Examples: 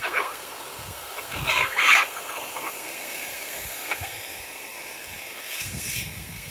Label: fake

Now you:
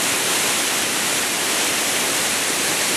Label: fake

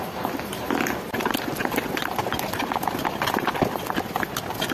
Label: real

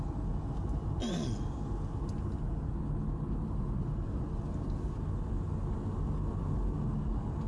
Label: real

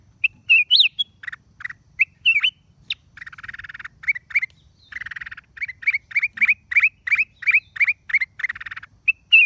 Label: real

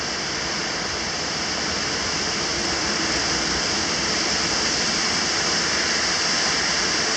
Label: real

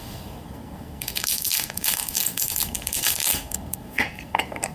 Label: fake